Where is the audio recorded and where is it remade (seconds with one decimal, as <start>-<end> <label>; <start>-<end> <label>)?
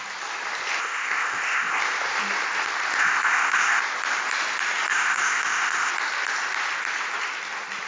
0.0-0.8 recorded; 0.8-1.8 remade; 1.8-3.0 recorded; 3.0-3.8 remade; 3.8-4.9 recorded; 4.9-5.9 remade; 5.9-7.9 recorded